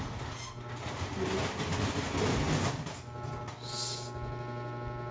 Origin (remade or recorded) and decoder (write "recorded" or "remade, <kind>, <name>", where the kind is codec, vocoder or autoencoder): recorded